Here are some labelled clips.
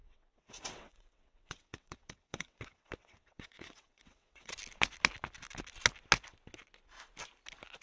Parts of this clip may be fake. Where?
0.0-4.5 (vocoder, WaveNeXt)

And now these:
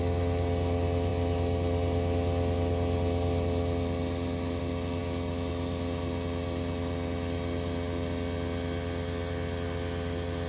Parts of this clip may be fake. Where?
none

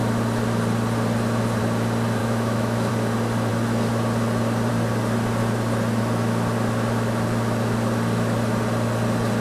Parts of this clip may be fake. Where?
2.2-2.9 (autoencoder, DAC-VAE)